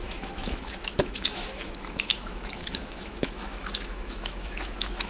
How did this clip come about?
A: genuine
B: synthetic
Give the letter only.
B